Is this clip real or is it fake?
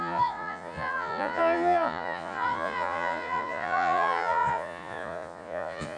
fake